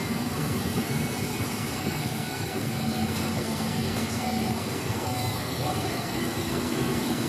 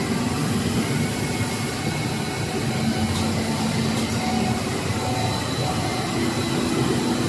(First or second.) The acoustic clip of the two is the second